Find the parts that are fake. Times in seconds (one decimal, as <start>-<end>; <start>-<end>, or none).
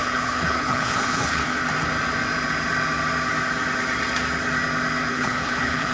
0.0-1.6; 5.1-5.9